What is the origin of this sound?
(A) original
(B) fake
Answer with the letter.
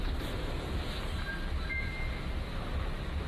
A